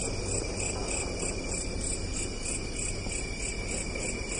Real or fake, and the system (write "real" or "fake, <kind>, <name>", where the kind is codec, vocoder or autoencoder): real